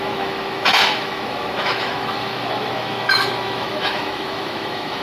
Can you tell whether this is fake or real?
fake